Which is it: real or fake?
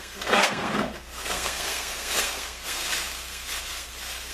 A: fake